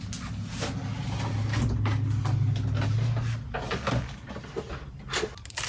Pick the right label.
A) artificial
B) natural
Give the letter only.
B